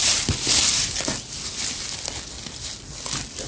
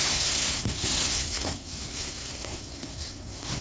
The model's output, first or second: second